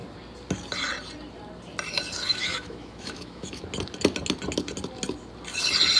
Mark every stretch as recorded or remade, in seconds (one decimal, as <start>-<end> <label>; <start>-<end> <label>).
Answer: 0.0-2.3 recorded; 2.3-3.6 remade; 3.6-6.0 recorded